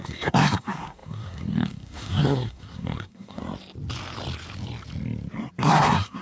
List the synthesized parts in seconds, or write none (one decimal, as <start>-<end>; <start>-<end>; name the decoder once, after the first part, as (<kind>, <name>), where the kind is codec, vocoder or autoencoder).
0.0-3.4 (codec, SNAC); 5.6-6.2

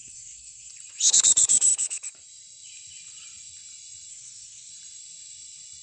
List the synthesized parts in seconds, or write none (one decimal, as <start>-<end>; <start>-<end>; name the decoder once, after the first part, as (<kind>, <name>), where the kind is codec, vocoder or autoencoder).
0.0-0.7 (codec, SNAC); 4.1-4.7

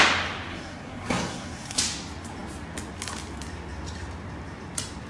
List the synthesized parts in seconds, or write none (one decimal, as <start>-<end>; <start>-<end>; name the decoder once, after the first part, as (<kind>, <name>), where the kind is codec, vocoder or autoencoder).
0.5-1.8 (codec, SNAC)

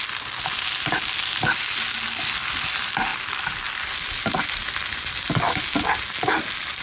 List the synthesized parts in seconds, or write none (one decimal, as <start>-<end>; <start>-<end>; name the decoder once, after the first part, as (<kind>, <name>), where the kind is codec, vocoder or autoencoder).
none

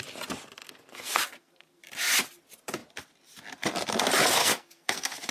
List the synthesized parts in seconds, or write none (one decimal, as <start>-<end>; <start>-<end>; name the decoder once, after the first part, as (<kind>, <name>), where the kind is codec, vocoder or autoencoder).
0.6-1.8 (codec, SNAC); 4.4-5.3